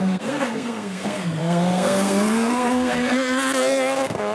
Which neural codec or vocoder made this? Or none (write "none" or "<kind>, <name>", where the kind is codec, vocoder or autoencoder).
codec, SNAC